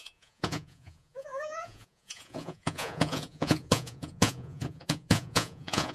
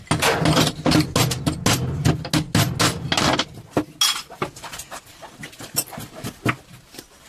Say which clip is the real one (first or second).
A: second